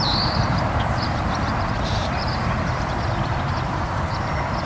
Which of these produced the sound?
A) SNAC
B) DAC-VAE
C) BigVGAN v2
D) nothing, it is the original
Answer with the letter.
C